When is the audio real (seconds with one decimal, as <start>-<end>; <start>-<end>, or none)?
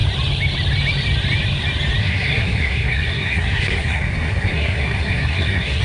0.0-2.0